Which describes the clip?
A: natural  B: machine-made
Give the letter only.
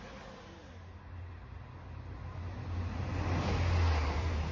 A